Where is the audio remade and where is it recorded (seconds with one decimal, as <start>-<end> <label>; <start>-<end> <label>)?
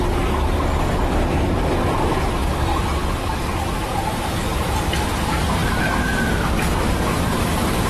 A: 0.0-7.9 recorded